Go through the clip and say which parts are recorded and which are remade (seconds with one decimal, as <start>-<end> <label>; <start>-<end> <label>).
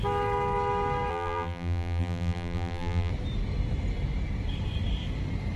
0.0-1.1 recorded; 1.1-3.1 remade; 3.1-5.6 recorded